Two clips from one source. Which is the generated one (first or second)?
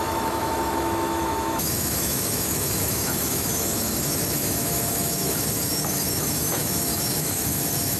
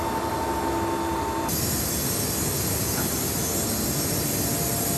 first